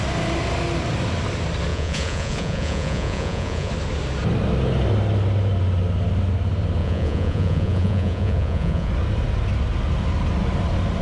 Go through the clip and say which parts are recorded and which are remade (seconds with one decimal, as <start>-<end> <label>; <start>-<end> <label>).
0.0-1.7 recorded; 1.7-3.7 remade; 3.7-6.8 recorded; 6.8-8.9 remade; 8.9-11.0 recorded